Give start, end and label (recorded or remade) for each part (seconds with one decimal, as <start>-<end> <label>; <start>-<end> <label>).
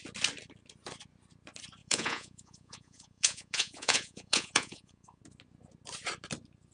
0.0-1.8 recorded; 1.8-5.2 remade; 5.2-6.7 recorded